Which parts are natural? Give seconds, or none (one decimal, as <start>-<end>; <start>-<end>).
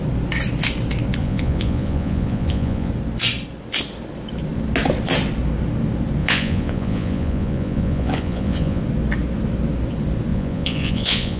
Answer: 0.0-1.2; 2.9-6.2; 8.8-10.3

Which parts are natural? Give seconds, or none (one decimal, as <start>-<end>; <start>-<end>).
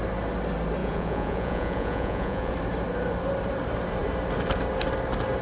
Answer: 0.0-0.8; 2.5-5.4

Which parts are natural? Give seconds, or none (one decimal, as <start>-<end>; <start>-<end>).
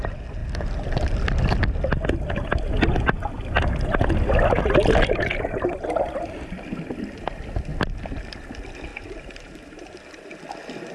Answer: 0.0-8.9; 10.0-10.9